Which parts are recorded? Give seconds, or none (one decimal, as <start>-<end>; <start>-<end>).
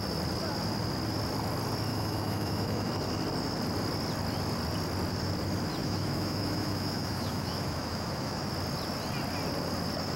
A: 0.0-1.9; 2.9-5.8; 8.5-10.2